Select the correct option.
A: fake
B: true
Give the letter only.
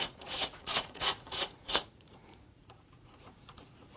A